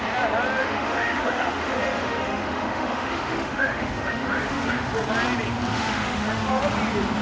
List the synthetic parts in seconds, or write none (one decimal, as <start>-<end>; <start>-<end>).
0.6-4.9; 5.7-6.6